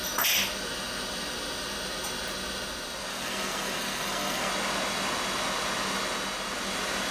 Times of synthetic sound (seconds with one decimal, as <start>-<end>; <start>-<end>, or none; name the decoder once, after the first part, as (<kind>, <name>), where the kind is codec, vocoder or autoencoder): 3.1-4.5 (codec, SNAC)